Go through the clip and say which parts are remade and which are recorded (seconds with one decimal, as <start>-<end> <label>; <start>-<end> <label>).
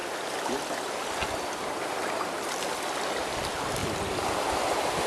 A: 0.0-5.1 recorded